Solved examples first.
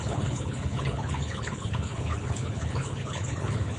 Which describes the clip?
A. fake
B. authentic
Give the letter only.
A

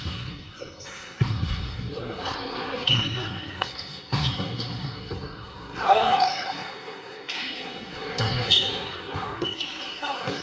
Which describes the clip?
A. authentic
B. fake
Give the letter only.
B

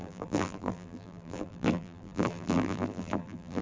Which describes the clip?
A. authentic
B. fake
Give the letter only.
B